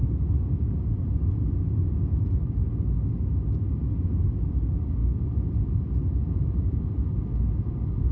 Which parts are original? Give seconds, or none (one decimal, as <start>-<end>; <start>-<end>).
0.0-8.1